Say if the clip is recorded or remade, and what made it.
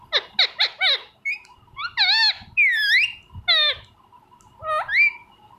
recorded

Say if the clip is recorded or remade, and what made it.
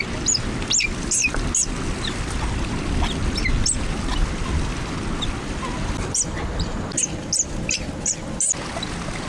recorded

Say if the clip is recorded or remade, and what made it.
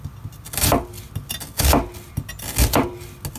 recorded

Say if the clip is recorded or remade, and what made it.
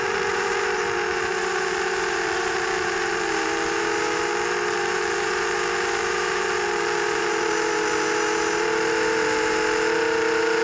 remade, vocoder, BigVGAN v2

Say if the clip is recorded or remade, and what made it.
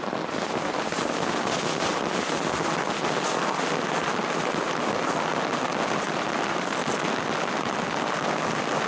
recorded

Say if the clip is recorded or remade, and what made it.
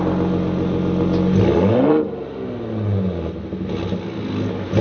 recorded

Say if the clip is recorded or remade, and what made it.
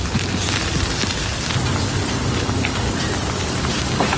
recorded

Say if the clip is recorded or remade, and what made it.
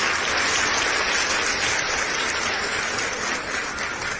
recorded